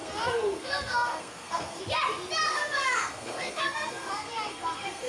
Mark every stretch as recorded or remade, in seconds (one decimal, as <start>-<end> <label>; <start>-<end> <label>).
0.0-1.8 remade; 1.8-2.5 recorded; 2.5-5.1 remade